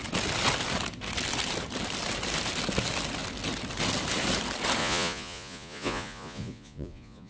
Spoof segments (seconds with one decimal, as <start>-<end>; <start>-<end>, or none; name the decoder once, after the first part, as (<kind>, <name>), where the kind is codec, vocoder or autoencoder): 4.8-7.3 (vocoder, Vocos)